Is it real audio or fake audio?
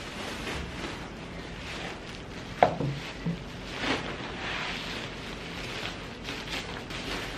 real